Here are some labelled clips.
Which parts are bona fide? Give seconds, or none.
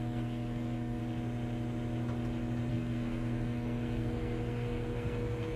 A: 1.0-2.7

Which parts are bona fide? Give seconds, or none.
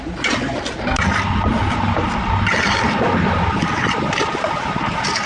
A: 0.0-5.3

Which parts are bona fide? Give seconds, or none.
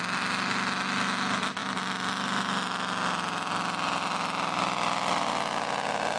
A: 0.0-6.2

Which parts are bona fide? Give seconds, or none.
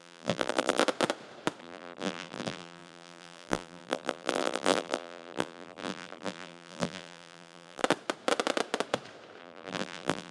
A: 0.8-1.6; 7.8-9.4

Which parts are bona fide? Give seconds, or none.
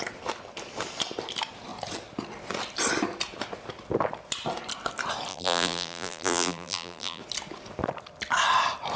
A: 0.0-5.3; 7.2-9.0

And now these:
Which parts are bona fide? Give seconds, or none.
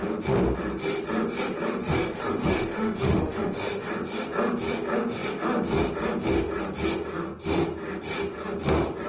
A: 0.0-1.8; 3.9-9.1